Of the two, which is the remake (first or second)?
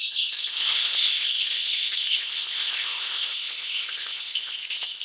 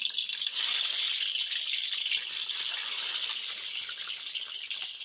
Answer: first